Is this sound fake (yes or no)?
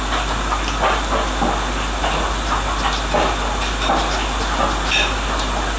no